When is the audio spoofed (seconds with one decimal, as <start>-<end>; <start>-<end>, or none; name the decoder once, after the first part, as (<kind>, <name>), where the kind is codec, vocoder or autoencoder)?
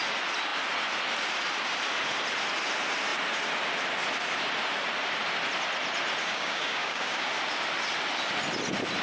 6.2-7.3 (codec, DAC)